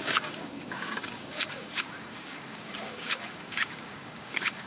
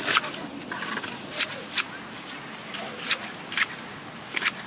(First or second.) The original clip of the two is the second